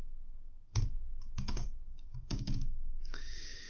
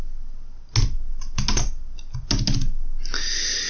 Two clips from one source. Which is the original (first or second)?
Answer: second